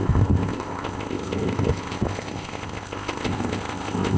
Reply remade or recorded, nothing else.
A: remade